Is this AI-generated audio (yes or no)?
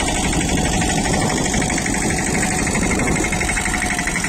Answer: no